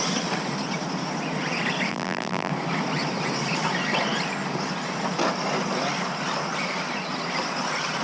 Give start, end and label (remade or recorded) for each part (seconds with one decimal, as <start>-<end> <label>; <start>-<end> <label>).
0.0-1.9 recorded; 1.9-2.5 remade; 2.5-8.0 recorded